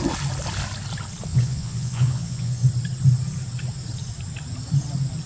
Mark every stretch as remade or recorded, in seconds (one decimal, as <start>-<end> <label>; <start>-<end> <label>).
0.0-1.3 recorded; 1.3-2.7 remade; 2.7-5.3 recorded